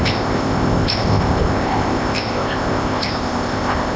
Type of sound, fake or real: fake